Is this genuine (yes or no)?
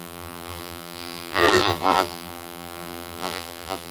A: no